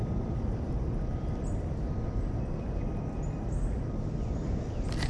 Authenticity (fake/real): real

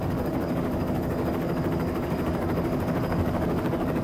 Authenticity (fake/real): fake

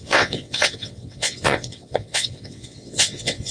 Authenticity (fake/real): fake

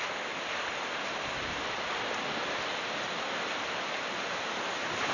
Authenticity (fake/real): real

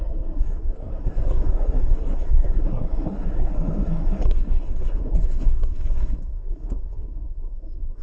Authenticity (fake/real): fake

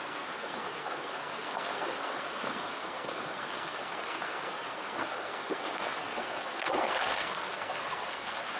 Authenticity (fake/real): fake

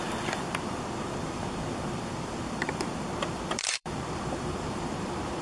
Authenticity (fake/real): fake